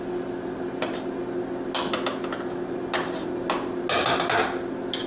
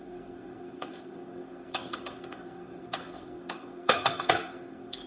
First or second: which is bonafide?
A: first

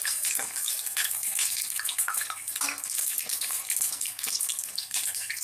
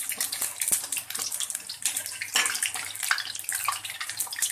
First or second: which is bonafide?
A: second